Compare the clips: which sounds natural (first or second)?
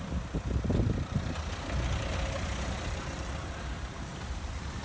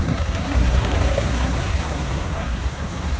first